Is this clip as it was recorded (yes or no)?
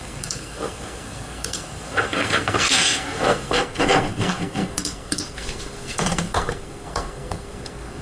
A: no